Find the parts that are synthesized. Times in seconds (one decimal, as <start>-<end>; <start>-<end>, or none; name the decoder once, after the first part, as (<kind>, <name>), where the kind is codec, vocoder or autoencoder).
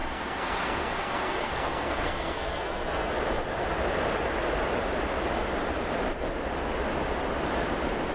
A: 0.0-3.1 (codec, SNAC)